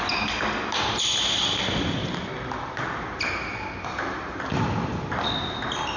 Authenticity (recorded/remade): recorded